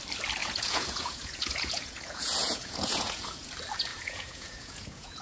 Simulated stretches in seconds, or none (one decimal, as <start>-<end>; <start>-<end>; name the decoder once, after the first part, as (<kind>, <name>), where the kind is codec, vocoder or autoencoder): 0.4-3.5 (vocoder, Vocos); 3.9-5.2